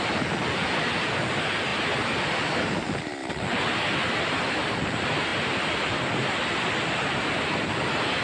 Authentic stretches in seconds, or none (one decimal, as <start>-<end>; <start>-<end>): 0.0-8.2